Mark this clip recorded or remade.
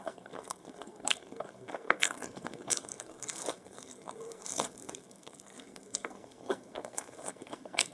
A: remade